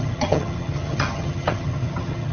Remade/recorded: remade